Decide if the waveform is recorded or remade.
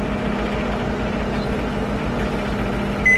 recorded